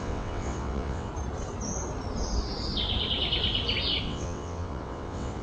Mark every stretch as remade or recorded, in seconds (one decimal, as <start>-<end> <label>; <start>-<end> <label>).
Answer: 0.0-1.1 remade; 1.1-4.0 recorded; 4.0-5.4 remade

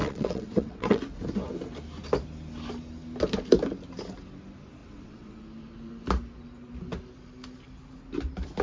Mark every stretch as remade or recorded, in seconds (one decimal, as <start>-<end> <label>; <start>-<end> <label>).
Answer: 0.0-1.0 remade; 1.0-4.8 recorded; 4.8-5.4 remade; 5.4-8.6 recorded

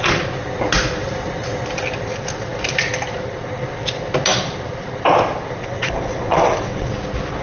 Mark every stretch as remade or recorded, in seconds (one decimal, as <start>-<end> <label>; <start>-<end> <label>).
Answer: 0.0-5.6 recorded; 5.6-6.9 remade; 6.9-7.4 recorded

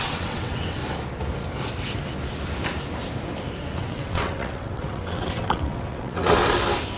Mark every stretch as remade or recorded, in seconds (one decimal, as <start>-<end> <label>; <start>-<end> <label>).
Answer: 0.0-0.8 remade; 0.8-3.8 recorded; 3.8-6.4 remade; 6.4-7.0 recorded

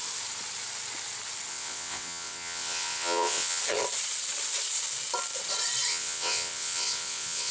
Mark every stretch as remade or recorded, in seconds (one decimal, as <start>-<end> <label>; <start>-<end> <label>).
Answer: 0.0-1.5 recorded; 1.5-3.6 remade; 3.6-5.9 recorded; 5.9-7.5 remade

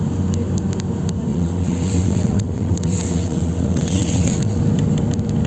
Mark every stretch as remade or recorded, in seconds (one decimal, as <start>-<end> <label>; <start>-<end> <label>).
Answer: 0.0-1.3 recorded; 1.3-4.6 remade; 4.6-5.5 recorded

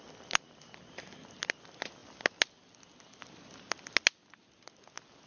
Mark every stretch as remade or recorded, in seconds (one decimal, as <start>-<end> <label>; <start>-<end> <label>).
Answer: 0.0-5.3 recorded

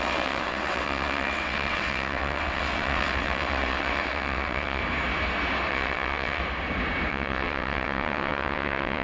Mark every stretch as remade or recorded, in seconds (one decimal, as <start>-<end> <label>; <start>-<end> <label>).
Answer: 0.0-4.8 remade; 4.8-5.7 recorded; 5.7-6.4 remade; 6.4-7.1 recorded; 7.1-9.0 remade